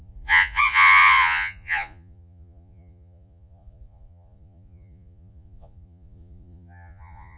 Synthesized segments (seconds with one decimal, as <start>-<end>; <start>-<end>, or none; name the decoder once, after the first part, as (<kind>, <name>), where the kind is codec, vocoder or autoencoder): 0.0-7.4 (vocoder, Vocos)